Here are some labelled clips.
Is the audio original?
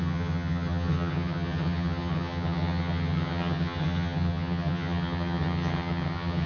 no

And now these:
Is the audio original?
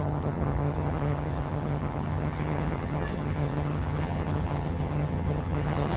no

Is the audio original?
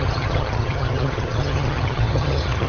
no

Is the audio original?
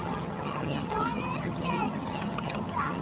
no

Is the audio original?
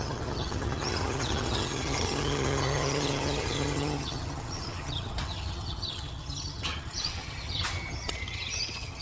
no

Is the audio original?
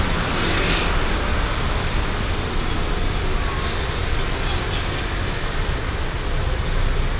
yes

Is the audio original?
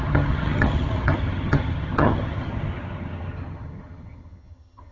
no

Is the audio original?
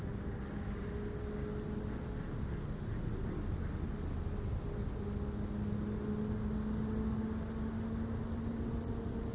yes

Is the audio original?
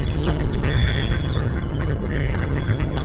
no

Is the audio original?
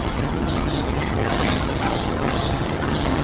no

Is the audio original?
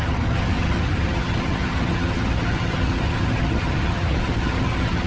no